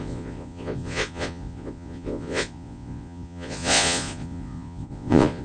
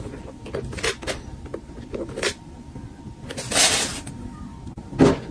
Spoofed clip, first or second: first